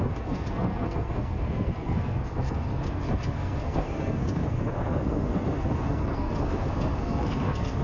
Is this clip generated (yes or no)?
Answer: yes